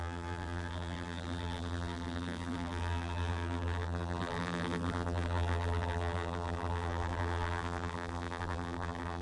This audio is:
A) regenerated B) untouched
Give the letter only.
A